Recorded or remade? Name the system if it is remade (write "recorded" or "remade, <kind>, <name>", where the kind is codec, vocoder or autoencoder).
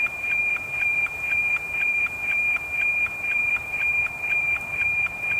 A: remade, vocoder, BigVGAN v2